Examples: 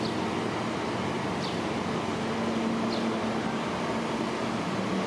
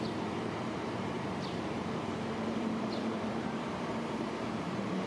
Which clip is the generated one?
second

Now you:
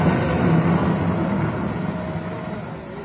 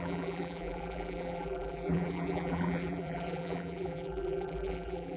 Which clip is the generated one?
second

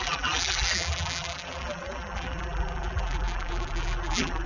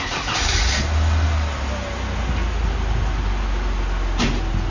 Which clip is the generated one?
first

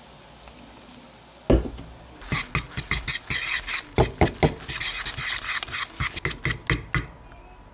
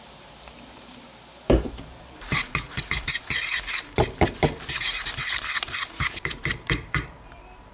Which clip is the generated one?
second